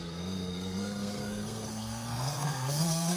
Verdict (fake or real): fake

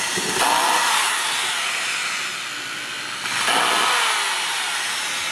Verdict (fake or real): real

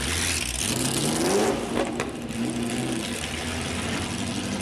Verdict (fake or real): real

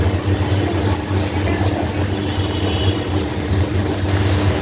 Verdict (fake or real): real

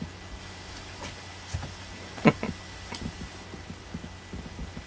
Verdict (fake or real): real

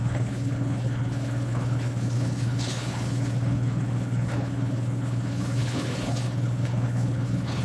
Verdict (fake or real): fake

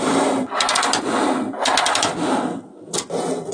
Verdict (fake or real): real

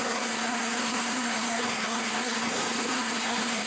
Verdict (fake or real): fake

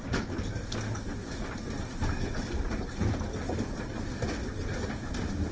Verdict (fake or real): real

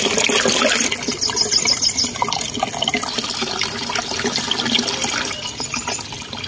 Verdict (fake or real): real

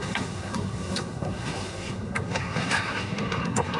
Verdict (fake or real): fake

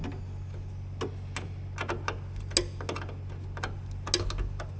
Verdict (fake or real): real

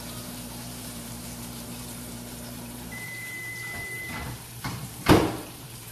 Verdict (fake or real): fake